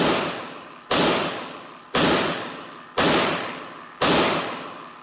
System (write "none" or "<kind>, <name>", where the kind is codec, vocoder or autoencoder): none